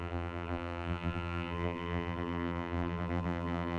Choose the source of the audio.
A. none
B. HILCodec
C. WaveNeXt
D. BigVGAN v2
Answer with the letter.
D